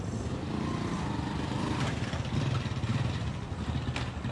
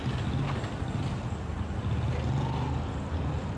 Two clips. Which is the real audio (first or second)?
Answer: second